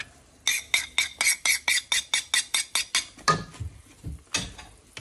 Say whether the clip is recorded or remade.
recorded